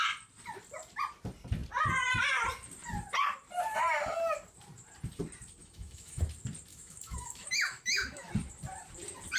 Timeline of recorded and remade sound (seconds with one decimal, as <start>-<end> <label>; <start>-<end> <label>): 0.0-5.6 recorded; 5.6-6.2 remade; 6.2-6.7 recorded; 6.7-8.3 remade; 8.3-9.4 recorded